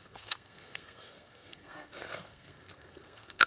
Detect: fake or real fake